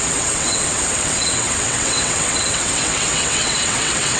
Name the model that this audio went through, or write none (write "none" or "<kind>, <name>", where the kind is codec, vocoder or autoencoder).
vocoder, WaveNeXt